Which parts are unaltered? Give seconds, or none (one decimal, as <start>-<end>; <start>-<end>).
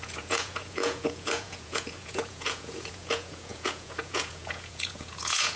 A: none